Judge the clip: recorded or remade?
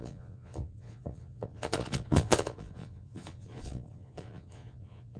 remade